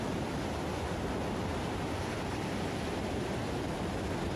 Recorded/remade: remade